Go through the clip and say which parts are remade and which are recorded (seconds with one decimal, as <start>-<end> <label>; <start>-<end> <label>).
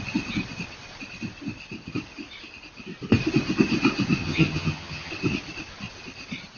0.0-4.2 recorded; 4.2-5.1 remade; 5.1-6.6 recorded